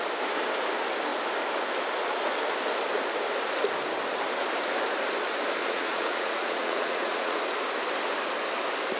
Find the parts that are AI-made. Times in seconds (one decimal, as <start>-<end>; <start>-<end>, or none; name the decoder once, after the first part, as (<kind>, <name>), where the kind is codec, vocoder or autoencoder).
5.6-7.4 (vocoder, Vocos)